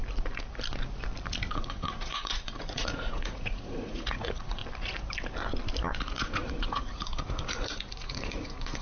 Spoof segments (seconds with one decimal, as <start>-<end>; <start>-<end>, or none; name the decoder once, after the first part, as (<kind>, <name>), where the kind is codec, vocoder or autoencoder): 1.5-4.6 (vocoder, Vocos); 6.0-8.8